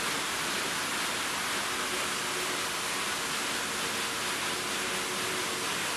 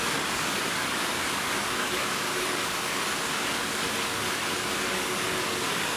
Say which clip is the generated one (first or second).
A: second